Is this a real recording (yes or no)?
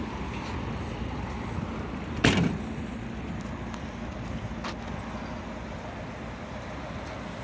yes